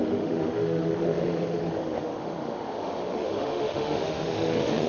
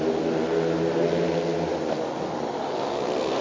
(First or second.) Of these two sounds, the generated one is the first